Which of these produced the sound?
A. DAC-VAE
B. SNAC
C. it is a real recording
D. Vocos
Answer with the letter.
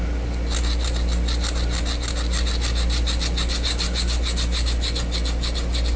C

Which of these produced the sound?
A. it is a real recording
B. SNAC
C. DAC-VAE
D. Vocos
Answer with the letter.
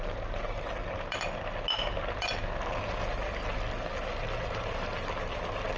A